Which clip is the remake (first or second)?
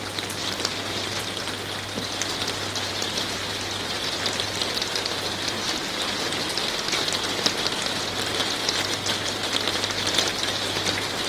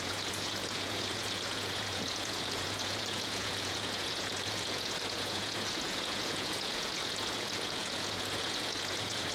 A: second